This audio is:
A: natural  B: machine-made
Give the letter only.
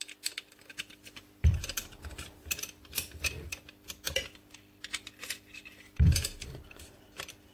B